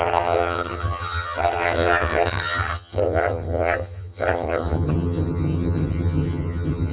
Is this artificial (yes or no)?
yes